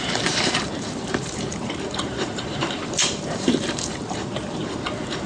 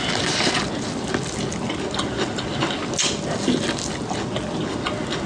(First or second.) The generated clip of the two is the first